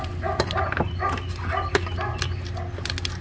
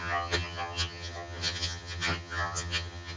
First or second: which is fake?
second